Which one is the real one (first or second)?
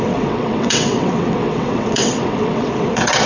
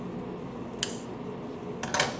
second